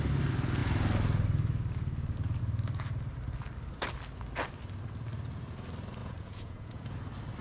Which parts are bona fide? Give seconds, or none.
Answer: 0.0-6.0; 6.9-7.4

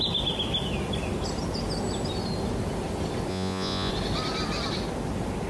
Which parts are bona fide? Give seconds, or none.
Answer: 0.0-3.3; 3.9-5.5

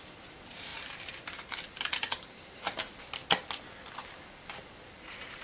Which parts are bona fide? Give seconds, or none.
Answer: 2.9-5.0

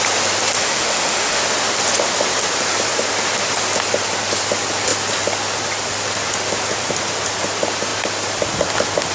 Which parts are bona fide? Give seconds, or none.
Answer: 0.0-0.6; 1.4-9.1

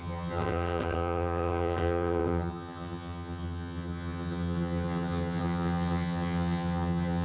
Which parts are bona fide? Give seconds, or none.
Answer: none